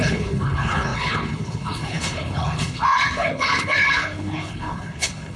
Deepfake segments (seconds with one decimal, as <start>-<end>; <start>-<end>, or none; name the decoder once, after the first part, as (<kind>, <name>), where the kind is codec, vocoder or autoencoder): 0.0-5.4 (codec, HILCodec)